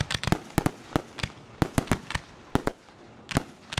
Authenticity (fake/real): real